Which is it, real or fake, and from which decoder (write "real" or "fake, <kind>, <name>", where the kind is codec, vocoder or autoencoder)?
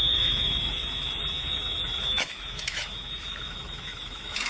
fake, autoencoder, DAC-VAE